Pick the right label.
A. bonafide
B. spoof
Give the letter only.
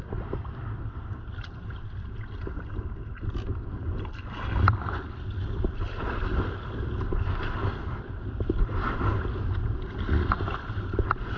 A